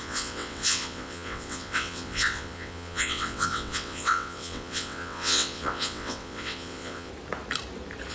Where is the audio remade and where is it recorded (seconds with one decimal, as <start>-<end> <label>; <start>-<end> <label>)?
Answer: 0.0-7.1 remade; 7.1-8.1 recorded